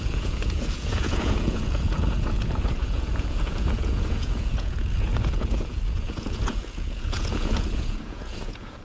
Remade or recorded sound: remade